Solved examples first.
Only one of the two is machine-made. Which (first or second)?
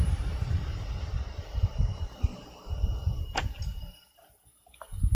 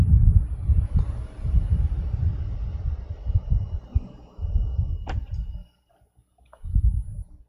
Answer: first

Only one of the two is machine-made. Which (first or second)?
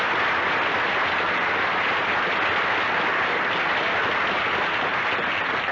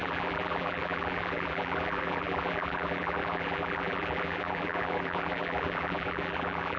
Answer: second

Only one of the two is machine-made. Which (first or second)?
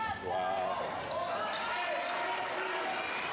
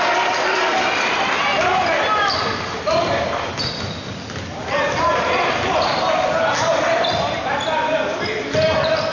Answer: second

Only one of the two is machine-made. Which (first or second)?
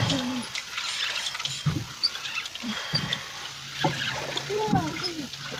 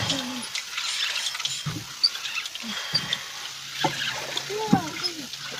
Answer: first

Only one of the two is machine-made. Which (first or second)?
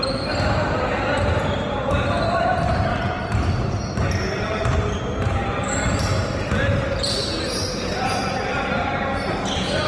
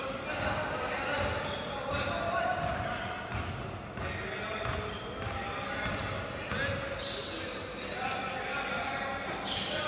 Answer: first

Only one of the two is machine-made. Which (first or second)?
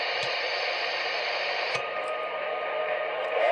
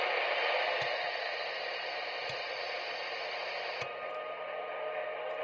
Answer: first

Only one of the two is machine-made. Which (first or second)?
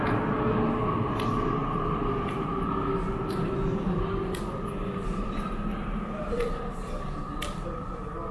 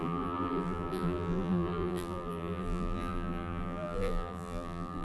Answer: second